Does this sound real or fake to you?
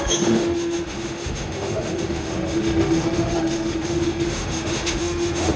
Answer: fake